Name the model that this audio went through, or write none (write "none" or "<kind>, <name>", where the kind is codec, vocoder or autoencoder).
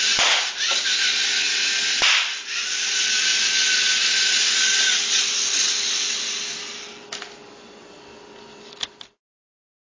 none